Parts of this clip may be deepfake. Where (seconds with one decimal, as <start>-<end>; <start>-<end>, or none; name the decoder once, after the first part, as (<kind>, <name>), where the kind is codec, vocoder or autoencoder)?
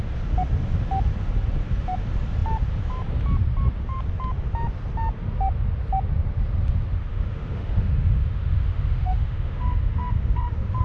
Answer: 7.1-10.8 (autoencoder, DAC-VAE)